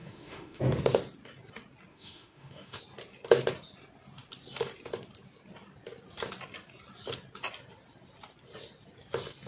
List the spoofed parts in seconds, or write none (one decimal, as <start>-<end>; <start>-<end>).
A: 0.0-0.6; 1.9-2.8